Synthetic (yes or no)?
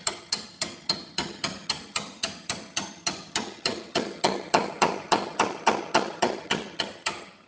yes